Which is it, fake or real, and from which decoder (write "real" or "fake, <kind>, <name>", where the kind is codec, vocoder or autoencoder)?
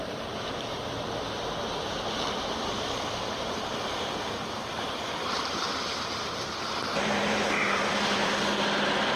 fake, vocoder, BigVGAN v2